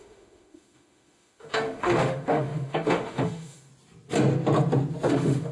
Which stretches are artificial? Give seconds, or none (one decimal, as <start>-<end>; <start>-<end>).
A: 0.0-3.7; 5.1-5.5